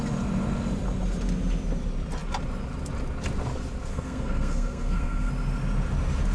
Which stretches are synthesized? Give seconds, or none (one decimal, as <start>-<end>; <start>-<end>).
3.9-5.3